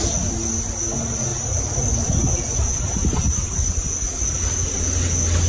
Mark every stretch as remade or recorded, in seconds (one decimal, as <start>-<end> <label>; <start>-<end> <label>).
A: 0.0-3.0 recorded; 3.0-3.8 remade; 3.8-5.5 recorded